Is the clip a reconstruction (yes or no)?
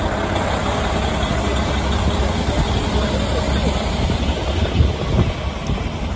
no